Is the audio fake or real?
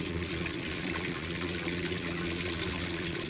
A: fake